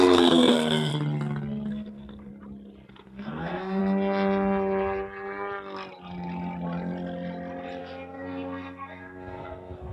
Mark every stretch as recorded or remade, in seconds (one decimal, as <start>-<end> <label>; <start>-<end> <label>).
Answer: 0.0-0.9 remade; 0.9-1.7 recorded; 1.7-2.3 remade; 2.3-2.9 recorded; 2.9-3.8 remade; 3.8-7.8 recorded; 7.8-9.9 remade